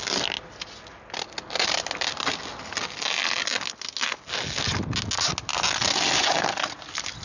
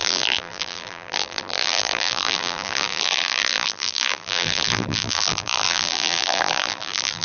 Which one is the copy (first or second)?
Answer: second